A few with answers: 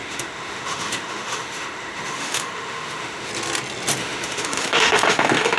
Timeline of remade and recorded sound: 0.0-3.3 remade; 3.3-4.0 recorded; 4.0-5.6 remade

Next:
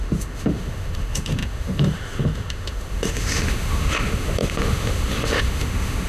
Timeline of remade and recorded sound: 0.0-6.1 remade

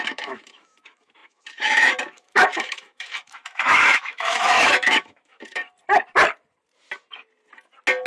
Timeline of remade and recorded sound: 0.0-5.6 remade; 5.6-8.1 recorded

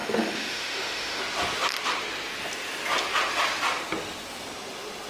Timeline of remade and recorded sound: 0.0-1.2 remade; 1.2-5.1 recorded

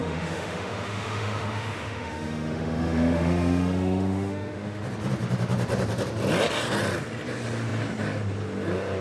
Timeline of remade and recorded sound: 0.0-4.8 remade; 4.8-9.0 recorded

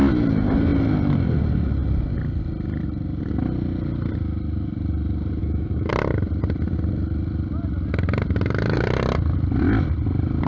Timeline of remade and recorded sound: 0.0-5.4 recorded; 5.4-5.9 remade; 5.9-10.5 recorded

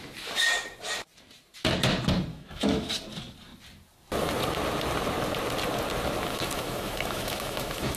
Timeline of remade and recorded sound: 0.0-2.3 recorded; 2.3-2.9 remade; 2.9-6.3 recorded; 6.3-8.0 remade